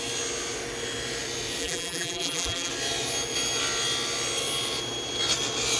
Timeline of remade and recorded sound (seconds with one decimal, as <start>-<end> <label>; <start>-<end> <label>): 0.0-1.6 recorded; 1.6-2.7 remade; 2.7-5.8 recorded